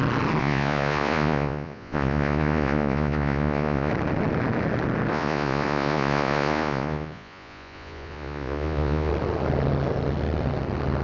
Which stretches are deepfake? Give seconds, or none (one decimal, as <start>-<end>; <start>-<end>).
0.4-3.9; 5.1-9.1